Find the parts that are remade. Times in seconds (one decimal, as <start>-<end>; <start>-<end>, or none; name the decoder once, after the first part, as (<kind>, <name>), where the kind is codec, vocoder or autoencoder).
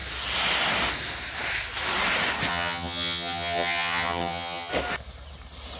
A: 2.5-4.7 (vocoder, HiFi-GAN)